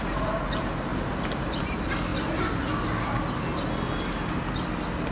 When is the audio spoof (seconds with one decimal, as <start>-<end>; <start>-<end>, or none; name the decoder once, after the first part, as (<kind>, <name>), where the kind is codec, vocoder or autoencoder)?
0.0-2.1 (vocoder, BigVGAN v2)